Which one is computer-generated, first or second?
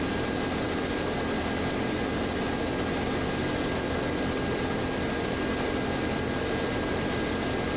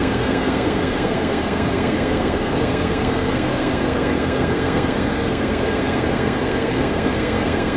second